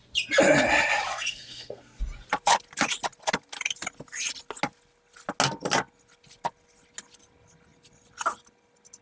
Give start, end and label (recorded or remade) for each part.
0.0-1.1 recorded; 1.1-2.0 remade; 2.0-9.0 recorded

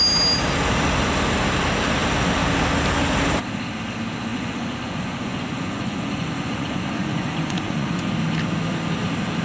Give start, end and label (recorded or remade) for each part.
0.0-4.3 recorded; 4.3-8.1 remade; 8.1-9.4 recorded

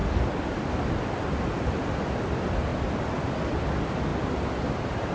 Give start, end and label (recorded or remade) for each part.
0.0-5.1 recorded